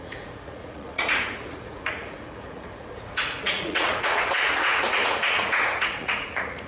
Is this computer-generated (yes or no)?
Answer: yes